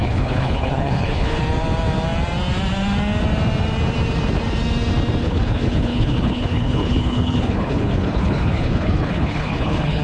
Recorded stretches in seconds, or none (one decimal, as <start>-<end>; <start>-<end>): 1.4-5.2